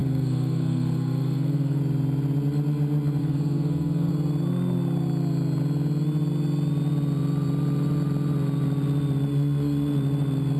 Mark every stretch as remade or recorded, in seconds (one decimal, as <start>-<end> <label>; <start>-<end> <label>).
0.0-1.8 remade; 1.8-3.2 recorded; 3.2-4.1 remade; 4.1-10.6 recorded